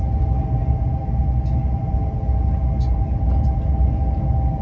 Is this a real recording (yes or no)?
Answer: yes